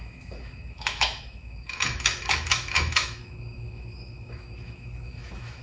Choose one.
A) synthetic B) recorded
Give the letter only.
A